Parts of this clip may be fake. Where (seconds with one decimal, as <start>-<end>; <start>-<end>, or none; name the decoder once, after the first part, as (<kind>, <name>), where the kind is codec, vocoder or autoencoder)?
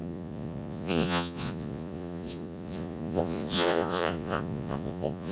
0.0-5.3 (vocoder, Vocos)